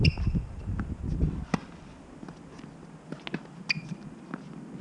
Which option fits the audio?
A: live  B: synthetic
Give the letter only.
A